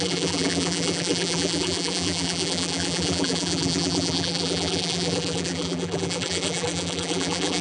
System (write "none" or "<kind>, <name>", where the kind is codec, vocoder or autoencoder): vocoder, BigVGAN v2